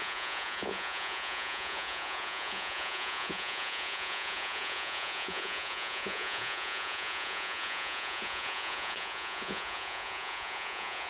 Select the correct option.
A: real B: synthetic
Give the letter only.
B